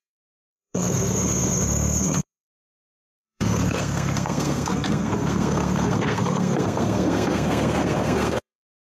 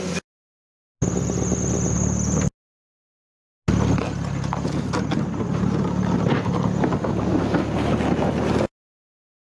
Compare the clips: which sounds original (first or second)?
second